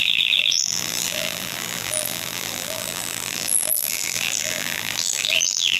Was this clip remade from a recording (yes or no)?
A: yes